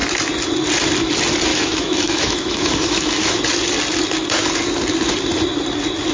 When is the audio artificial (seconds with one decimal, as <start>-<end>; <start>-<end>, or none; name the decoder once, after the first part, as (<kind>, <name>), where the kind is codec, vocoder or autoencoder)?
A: 1.5-3.4 (autoencoder, DAC-VAE)